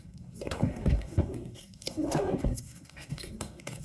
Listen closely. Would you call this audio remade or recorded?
remade